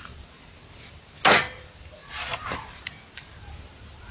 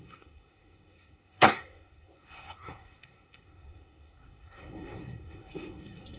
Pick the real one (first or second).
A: first